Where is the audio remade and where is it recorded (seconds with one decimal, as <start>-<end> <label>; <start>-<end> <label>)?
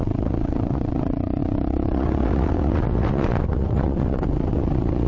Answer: 0.0-5.1 remade